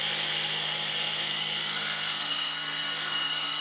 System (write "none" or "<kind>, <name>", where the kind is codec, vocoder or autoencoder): codec, SNAC